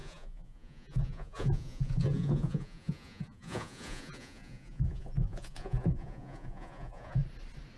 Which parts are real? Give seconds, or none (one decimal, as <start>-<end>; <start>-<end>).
7.2-7.8